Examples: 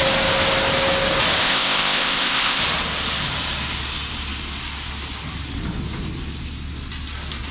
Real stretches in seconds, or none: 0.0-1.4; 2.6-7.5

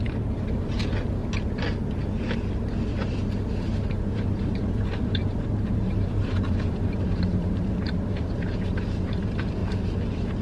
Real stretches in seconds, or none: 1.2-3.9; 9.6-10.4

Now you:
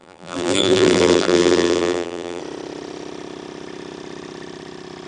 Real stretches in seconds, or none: 2.4-5.1